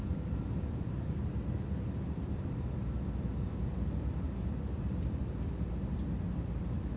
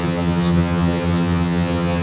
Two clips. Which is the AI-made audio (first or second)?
second